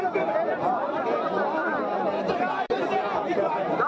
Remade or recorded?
remade